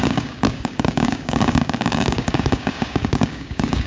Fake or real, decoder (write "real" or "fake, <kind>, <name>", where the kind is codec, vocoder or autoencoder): fake, codec, DAC